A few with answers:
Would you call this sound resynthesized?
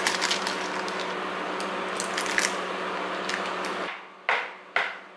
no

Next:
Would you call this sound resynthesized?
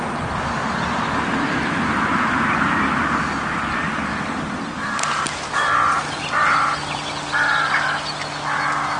no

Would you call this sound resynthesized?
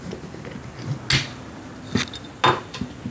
no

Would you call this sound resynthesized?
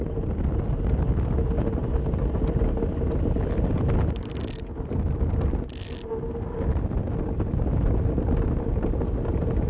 no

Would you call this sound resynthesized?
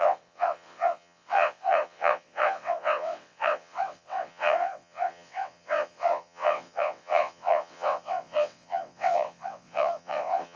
yes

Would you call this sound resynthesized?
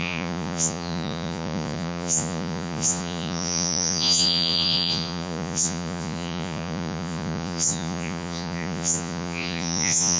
yes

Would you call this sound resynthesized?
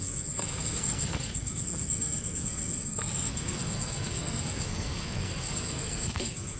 yes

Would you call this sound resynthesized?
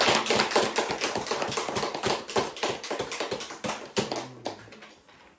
no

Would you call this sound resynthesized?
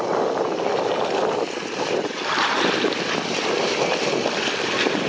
no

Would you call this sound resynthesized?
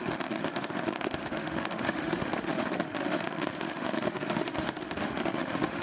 yes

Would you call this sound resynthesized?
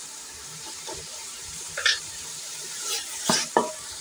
yes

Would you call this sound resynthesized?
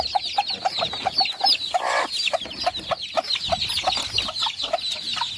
no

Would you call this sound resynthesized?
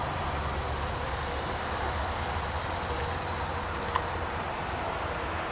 no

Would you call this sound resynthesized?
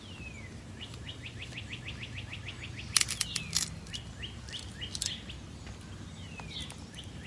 no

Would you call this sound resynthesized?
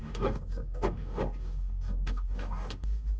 yes